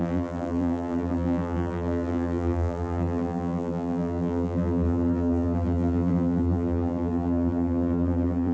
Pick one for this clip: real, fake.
fake